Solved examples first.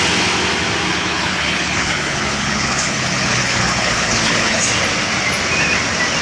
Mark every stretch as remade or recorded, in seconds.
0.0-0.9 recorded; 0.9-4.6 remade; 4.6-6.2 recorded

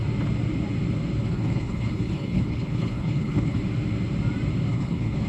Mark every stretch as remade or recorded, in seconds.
0.0-1.2 recorded; 1.2-3.6 remade; 3.6-4.7 recorded; 4.7-5.3 remade

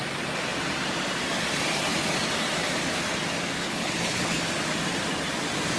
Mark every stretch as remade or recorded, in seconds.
0.0-3.6 recorded; 3.6-4.4 remade; 4.4-5.8 recorded